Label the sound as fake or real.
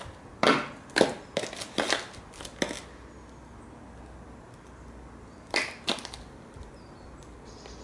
real